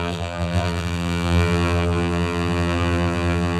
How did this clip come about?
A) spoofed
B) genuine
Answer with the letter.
A